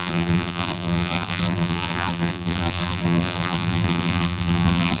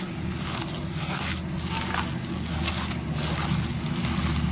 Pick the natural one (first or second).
second